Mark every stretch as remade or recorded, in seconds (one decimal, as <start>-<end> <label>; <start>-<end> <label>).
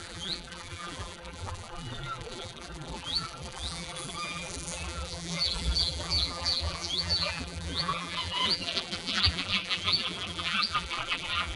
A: 0.0-11.6 remade